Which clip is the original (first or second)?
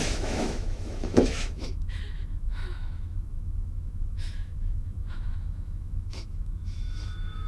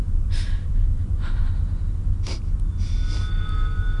second